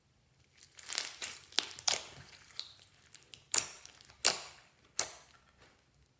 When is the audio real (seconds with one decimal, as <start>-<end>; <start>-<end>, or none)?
0.0-1.2; 4.9-6.2